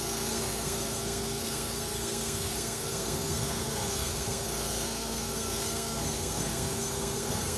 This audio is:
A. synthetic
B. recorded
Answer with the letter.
A